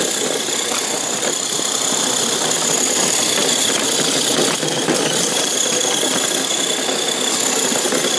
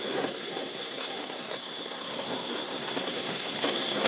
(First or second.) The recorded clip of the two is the first